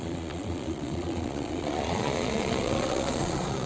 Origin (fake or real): fake